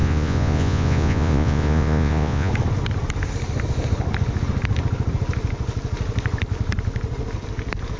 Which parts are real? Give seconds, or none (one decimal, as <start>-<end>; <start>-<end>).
2.5-8.0